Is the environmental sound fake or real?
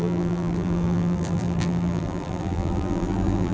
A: fake